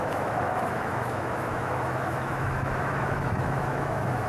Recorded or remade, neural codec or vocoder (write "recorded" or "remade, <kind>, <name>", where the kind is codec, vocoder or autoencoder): remade, autoencoder, DAC-VAE